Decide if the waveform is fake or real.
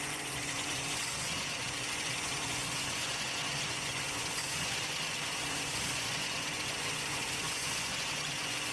fake